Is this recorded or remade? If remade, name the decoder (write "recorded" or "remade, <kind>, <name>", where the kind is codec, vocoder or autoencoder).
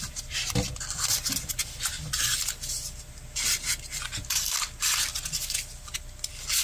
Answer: recorded